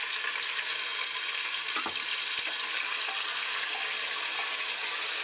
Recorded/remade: recorded